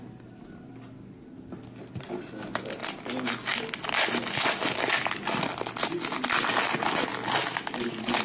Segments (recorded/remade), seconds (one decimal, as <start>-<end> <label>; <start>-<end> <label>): 0.0-8.2 recorded